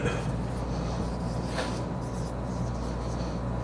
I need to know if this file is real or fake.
real